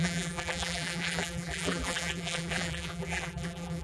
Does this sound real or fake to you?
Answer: fake